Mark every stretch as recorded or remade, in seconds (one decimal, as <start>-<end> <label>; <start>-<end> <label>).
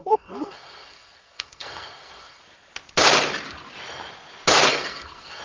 0.0-2.4 remade; 2.4-4.7 recorded; 4.7-5.4 remade